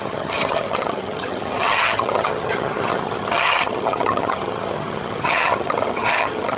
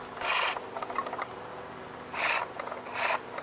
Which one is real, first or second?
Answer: second